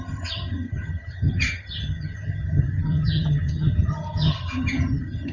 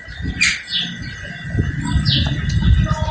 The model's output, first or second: first